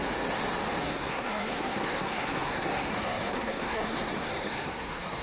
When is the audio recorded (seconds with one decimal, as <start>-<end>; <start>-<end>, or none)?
0.0-0.8